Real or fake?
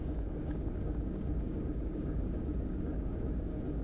fake